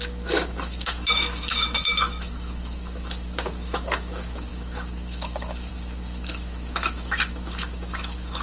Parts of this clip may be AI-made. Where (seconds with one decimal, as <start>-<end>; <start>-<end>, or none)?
0.0-8.4